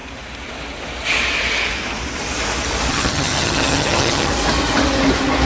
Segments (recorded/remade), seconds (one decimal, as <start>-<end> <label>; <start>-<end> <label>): 0.0-2.9 recorded; 2.9-4.3 remade; 4.3-5.5 recorded